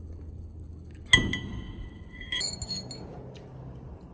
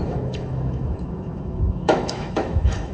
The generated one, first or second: second